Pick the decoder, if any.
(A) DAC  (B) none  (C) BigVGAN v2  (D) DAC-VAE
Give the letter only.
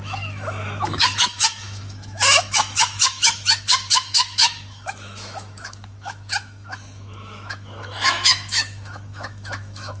D